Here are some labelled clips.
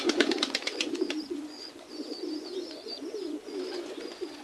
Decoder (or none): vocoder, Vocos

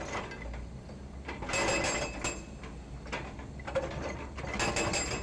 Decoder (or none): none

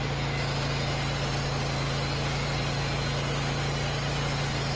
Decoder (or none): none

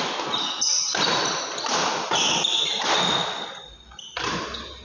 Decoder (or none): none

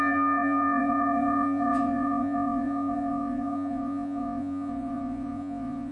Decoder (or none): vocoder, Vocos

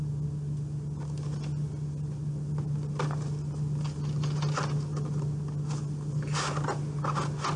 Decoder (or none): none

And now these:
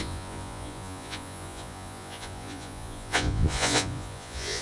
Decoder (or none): vocoder, Vocos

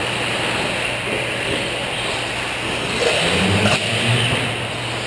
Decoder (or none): none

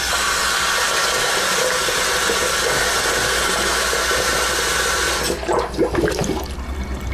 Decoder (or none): none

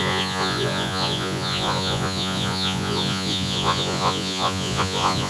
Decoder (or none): vocoder, Vocos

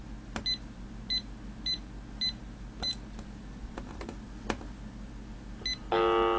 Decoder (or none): none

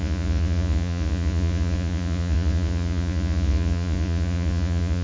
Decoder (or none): vocoder, Vocos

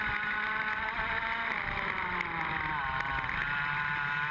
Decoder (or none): none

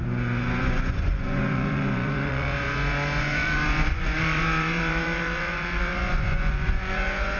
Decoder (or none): vocoder, Vocos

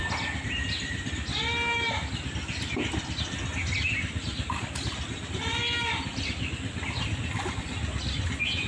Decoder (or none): none